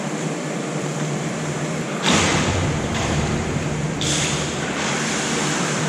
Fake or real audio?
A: fake